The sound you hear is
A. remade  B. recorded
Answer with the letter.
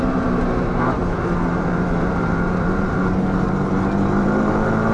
A